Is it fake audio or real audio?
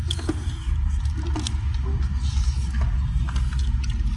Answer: real